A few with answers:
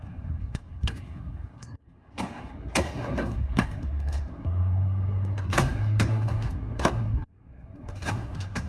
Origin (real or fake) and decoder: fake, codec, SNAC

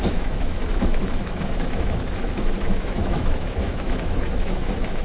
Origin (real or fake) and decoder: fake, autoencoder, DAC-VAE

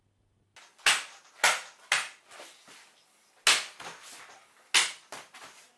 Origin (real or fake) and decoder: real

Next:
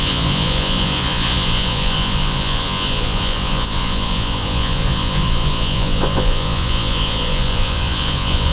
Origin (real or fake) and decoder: fake, vocoder, Vocos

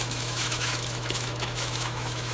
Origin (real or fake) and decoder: fake, autoencoder, DAC-VAE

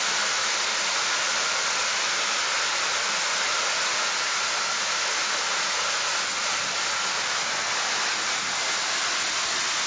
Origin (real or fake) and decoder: real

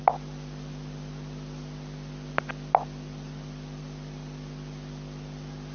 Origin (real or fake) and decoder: real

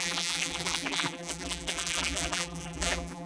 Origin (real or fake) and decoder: fake, vocoder, BigVGAN v2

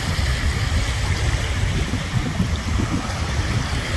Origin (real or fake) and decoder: real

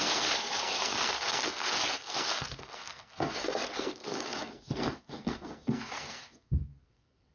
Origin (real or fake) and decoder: fake, codec, SNAC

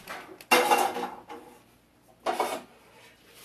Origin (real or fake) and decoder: real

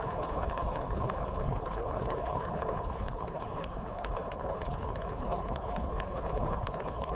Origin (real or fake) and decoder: fake, codec, HILCodec